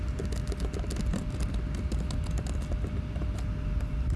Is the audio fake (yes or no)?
no